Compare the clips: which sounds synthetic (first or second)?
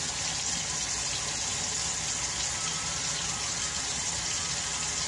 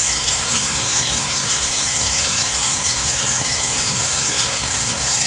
second